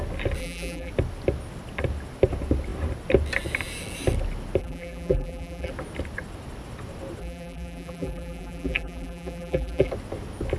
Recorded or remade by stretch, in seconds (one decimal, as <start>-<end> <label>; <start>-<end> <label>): 0.0-0.4 recorded; 0.4-0.9 remade; 0.9-4.6 recorded; 4.6-5.7 remade; 5.7-7.2 recorded; 7.2-9.9 remade; 9.9-10.6 recorded

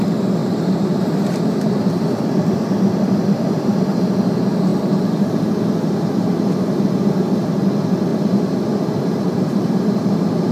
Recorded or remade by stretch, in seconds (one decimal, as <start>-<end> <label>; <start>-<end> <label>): 0.0-0.4 recorded; 0.4-3.2 remade; 3.2-8.1 recorded; 8.1-9.6 remade; 9.6-10.5 recorded

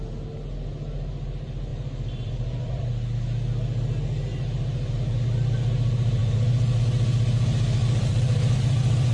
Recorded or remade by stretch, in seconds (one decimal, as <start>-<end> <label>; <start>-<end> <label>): 0.0-1.7 recorded; 1.7-2.9 remade; 2.9-6.2 recorded; 6.2-6.8 remade; 6.8-7.8 recorded; 7.8-9.1 remade

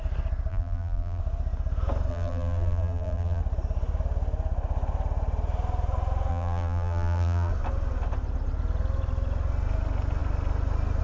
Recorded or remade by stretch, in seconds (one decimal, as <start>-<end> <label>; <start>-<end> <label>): 0.0-0.5 recorded; 0.5-1.2 remade; 1.2-2.1 recorded; 2.1-3.4 remade; 3.4-6.3 recorded; 6.3-7.5 remade; 7.5-11.0 recorded

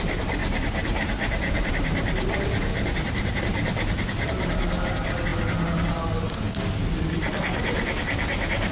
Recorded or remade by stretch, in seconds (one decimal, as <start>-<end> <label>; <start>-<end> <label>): 0.0-0.4 recorded; 0.4-1.7 remade; 1.7-2.7 recorded; 2.7-3.4 remade; 3.4-8.7 recorded

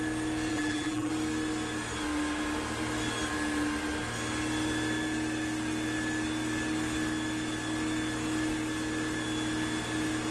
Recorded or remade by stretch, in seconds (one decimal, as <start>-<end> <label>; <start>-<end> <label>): 0.0-0.5 recorded; 0.5-1.1 remade; 1.1-10.3 recorded